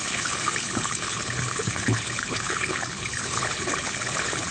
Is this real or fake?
fake